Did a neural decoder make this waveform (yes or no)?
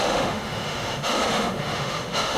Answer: yes